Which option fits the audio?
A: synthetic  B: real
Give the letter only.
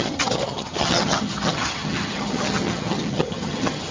A